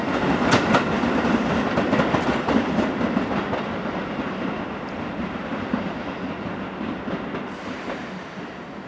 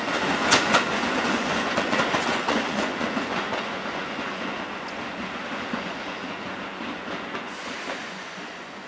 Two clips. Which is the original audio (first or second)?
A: first